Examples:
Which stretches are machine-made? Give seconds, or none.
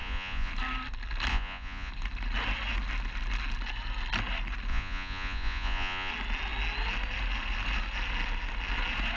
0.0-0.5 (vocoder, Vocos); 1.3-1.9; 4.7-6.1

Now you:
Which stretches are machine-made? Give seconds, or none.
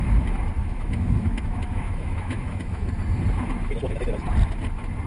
0.6-2.9 (autoencoder, DAC-VAE)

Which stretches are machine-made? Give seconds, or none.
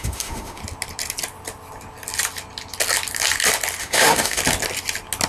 0.0-0.6 (autoencoder, DAC-VAE); 3.8-4.4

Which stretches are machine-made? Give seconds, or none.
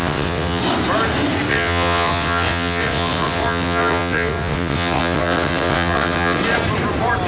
0.0-0.6 (vocoder, WaveNeXt); 1.5-6.4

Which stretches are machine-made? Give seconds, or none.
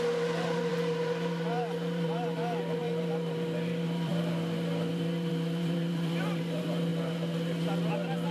0.0-6.9 (vocoder, BigVGAN v2); 7.9-8.3